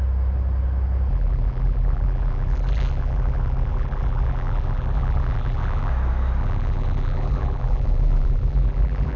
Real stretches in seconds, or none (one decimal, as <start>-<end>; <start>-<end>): 0.0-1.1; 5.9-6.4